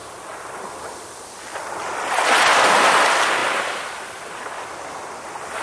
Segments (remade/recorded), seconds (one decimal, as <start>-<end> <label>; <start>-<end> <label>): 0.0-5.6 recorded